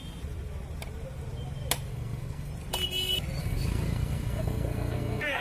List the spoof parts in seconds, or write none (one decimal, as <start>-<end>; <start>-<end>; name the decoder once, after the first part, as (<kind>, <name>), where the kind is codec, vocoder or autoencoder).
1.9-2.5 (codec, SNAC); 3.4-5.4